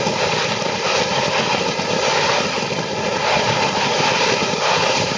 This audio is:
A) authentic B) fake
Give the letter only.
A